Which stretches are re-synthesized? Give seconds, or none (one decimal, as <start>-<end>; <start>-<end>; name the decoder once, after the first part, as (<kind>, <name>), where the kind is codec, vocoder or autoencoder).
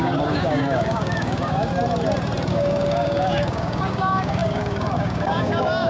0.0-1.7 (codec, DAC); 2.5-5.9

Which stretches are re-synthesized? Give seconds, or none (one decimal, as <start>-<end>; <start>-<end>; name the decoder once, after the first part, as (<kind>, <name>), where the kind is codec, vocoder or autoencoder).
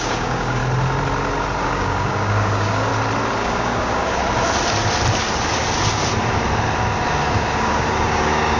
0.0-0.6 (codec, DAC); 1.6-2.9; 3.4-4.2; 7.2-8.6